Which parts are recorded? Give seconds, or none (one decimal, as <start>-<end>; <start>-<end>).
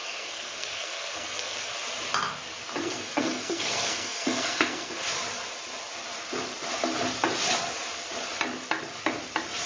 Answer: 1.7-2.8; 4.9-9.7